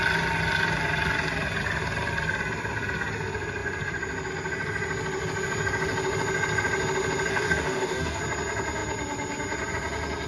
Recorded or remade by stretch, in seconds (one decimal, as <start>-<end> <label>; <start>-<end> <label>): 0.0-7.3 recorded; 7.3-8.2 remade; 8.2-10.3 recorded